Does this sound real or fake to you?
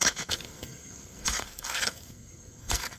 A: fake